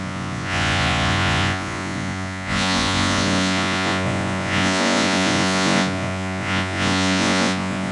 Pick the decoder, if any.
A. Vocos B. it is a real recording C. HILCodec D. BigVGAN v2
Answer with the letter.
A